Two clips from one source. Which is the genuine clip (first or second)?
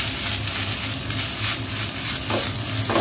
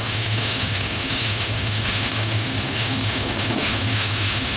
first